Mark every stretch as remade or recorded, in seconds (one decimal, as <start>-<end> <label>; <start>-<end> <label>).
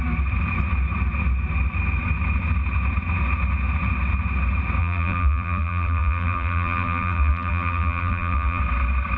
0.0-4.8 recorded; 4.8-8.6 remade; 8.6-9.2 recorded